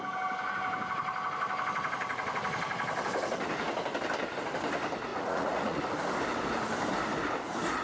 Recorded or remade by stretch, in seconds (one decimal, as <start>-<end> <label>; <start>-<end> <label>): 0.0-5.1 recorded; 5.1-5.8 remade; 5.8-7.8 recorded